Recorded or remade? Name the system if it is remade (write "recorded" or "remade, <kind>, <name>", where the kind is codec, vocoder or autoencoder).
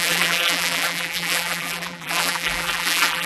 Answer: remade, vocoder, BigVGAN v2